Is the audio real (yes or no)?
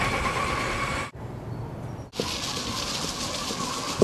yes